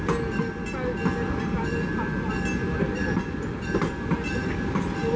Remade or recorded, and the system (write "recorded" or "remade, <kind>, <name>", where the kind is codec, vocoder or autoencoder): recorded